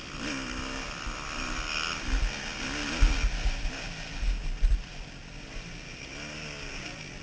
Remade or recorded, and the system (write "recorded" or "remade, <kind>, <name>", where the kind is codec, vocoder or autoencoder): recorded